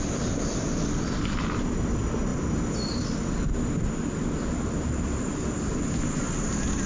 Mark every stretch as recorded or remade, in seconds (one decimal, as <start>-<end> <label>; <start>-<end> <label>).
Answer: 0.0-6.9 recorded